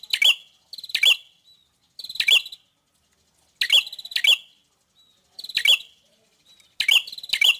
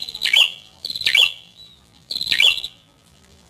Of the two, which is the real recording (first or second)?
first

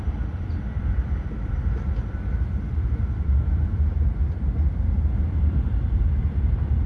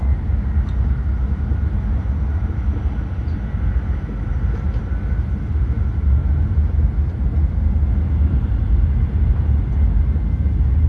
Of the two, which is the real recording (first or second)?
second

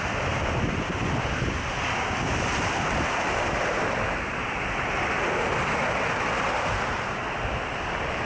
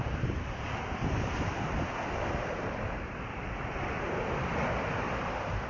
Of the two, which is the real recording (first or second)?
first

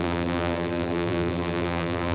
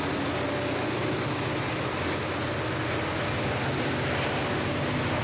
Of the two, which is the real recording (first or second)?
second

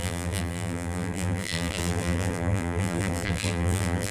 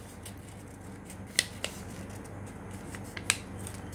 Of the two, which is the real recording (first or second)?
second